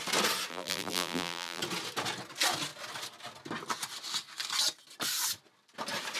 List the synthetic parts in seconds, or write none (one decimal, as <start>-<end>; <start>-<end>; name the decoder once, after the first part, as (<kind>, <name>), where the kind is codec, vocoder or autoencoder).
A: 0.5-1.6 (vocoder, BigVGAN v2)